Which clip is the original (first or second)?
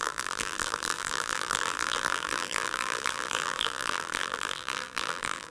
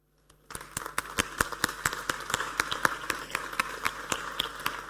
second